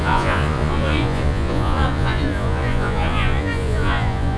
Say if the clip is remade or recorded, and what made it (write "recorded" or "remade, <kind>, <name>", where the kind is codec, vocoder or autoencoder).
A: remade, vocoder, Vocos